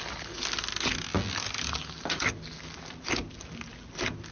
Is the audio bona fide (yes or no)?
yes